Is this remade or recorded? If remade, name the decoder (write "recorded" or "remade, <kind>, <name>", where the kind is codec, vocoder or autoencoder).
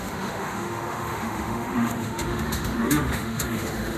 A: remade, autoencoder, DAC-VAE